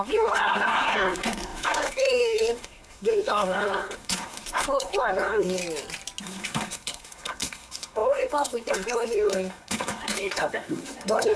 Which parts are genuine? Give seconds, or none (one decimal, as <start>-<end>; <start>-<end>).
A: 5.6-6.2